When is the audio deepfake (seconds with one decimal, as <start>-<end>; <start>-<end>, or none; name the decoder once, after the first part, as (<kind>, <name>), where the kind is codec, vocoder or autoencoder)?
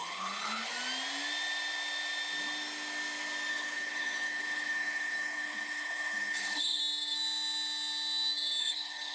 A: 0.0-0.7 (codec, HILCodec); 3.5-6.8; 8.6-9.1